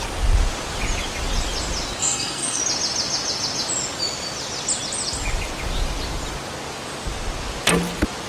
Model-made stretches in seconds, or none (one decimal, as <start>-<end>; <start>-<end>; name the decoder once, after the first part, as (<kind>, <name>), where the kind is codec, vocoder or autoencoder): 2.0-2.6 (codec, SNAC)